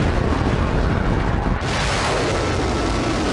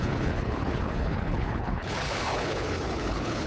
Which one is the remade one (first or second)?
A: second